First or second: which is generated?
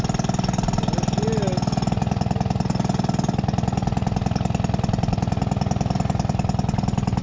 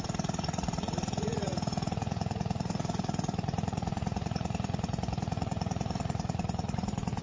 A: second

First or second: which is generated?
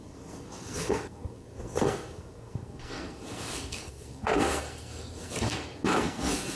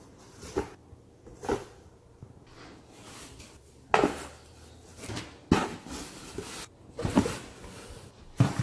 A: first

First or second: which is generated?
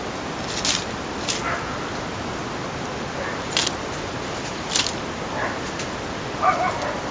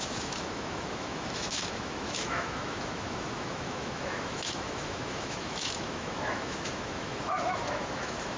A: second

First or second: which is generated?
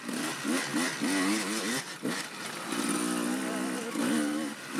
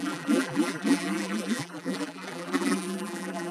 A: second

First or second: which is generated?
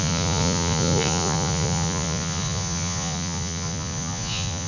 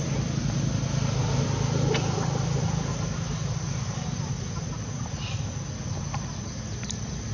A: first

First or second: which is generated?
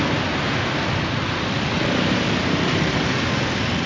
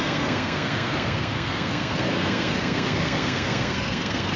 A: second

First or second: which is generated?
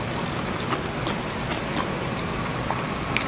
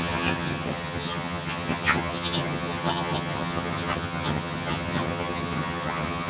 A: second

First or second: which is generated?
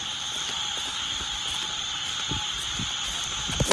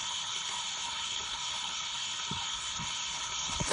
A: second